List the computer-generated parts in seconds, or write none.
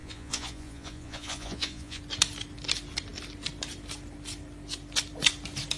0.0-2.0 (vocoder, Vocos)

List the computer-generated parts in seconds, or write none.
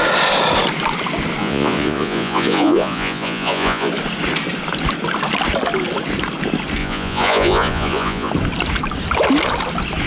1.4-3.9 (vocoder, Vocos); 6.8-8.3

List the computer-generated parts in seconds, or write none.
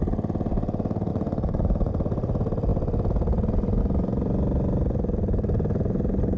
1.1-1.9 (vocoder, Vocos)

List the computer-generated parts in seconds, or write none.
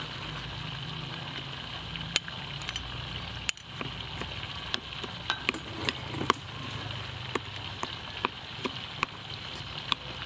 none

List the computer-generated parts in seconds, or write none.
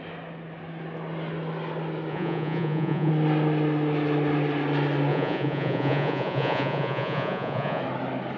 2.1-3.1 (vocoder, Vocos); 5.1-7.8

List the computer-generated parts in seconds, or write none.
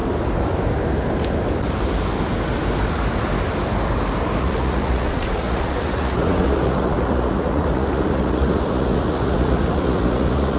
4.4-10.6 (vocoder, Vocos)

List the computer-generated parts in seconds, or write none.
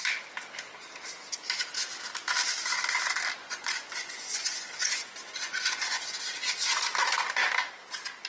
3.4-6.2 (vocoder, Vocos)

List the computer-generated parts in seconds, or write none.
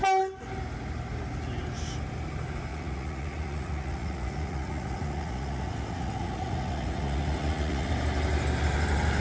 2.7-7.9 (vocoder, Vocos)